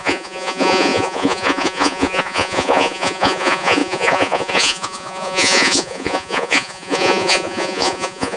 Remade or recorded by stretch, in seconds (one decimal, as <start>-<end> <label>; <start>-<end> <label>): 0.0-8.4 remade